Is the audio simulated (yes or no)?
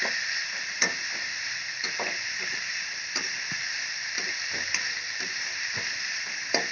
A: no